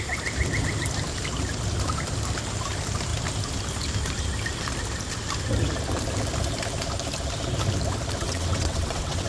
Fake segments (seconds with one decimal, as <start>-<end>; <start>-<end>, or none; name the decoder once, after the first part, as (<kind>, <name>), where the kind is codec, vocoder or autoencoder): 8.2-9.3 (vocoder, WaveNeXt)